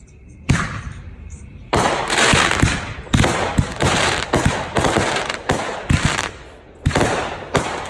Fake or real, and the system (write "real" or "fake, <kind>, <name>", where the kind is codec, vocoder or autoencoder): fake, vocoder, BigVGAN v2